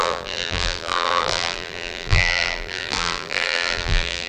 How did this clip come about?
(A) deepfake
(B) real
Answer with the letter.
A